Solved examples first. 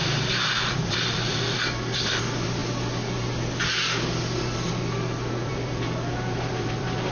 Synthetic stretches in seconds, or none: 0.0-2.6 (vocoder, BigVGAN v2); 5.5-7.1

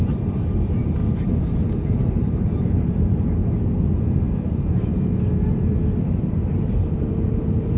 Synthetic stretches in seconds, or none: 0.0-3.4 (vocoder, BigVGAN v2); 6.0-7.8

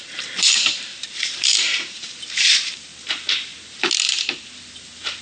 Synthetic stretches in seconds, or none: 0.0-2.9 (vocoder, BigVGAN v2); 4.6-5.2